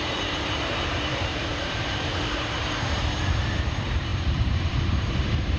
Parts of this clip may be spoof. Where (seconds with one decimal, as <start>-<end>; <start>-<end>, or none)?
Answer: 0.0-5.6